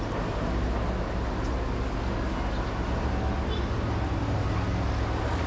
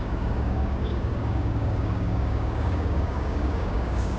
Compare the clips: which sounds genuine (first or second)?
first